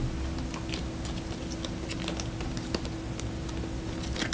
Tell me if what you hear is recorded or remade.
recorded